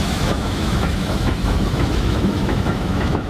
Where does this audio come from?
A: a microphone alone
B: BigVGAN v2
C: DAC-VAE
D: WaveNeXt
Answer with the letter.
C